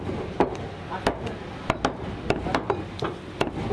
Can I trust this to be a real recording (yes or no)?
yes